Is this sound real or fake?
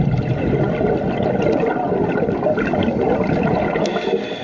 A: real